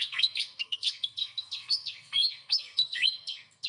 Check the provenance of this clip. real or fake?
fake